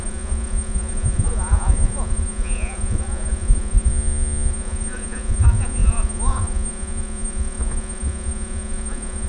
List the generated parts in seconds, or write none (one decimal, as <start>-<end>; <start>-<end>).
0.0-3.9; 4.5-9.3